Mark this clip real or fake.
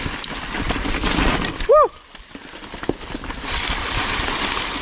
real